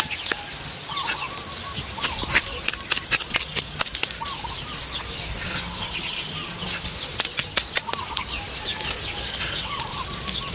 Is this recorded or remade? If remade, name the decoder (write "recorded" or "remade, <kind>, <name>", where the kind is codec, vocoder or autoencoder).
recorded